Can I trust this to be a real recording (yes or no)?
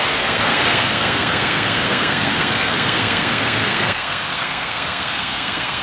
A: no